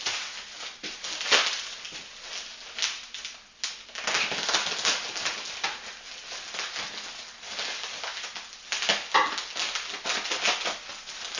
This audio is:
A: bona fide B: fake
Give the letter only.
A